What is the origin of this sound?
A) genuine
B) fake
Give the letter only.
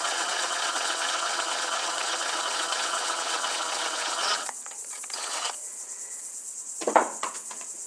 B